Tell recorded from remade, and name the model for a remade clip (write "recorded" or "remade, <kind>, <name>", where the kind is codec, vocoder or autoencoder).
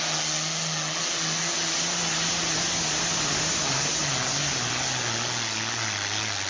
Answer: recorded